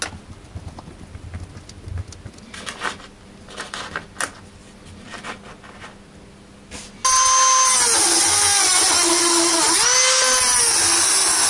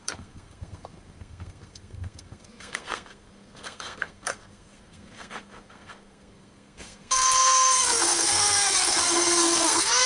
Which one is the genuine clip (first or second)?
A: first